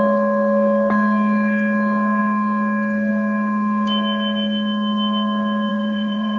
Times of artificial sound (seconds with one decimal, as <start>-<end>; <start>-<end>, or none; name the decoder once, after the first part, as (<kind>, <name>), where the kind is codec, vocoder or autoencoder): 5.7-6.4 (vocoder, Vocos)